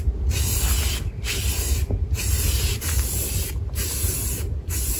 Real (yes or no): yes